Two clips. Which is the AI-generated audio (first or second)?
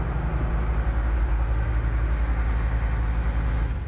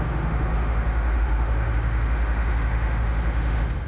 second